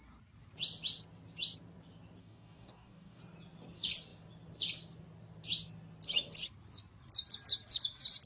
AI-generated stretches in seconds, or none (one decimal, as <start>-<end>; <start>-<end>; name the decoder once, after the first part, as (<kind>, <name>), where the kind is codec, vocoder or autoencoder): 2.2-3.2 (codec, DAC)